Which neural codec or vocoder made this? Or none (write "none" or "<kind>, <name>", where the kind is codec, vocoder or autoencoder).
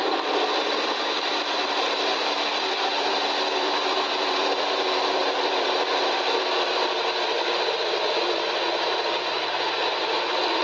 vocoder, BigVGAN v2